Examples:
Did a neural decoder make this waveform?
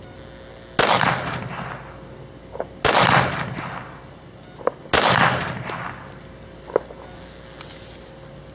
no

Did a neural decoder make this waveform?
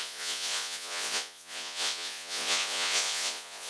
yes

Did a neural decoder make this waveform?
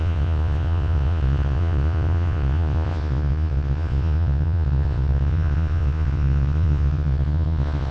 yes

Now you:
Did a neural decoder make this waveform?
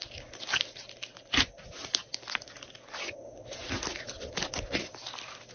no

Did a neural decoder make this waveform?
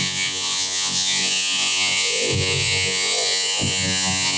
yes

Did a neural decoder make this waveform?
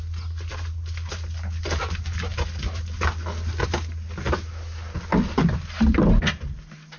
no